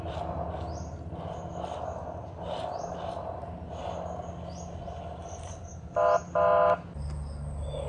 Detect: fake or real real